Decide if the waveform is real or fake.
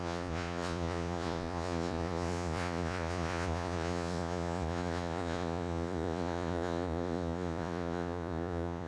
fake